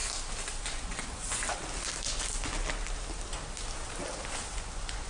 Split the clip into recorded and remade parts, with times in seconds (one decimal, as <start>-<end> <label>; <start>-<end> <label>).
0.0-0.6 recorded; 0.6-1.4 remade; 1.4-4.5 recorded; 4.5-5.1 remade